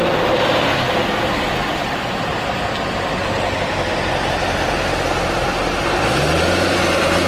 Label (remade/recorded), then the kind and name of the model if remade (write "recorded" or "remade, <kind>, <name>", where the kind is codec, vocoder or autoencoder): recorded